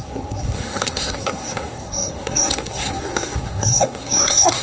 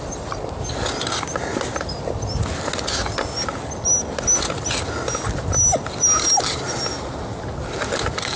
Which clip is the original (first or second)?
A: second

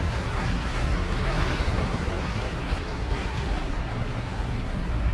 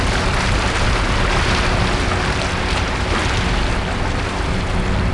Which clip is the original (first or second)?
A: second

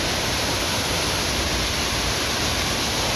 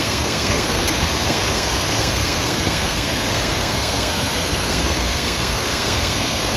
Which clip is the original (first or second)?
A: first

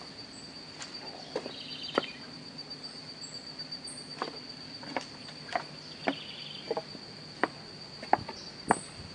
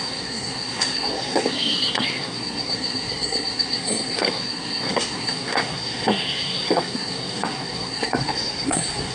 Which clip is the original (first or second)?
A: first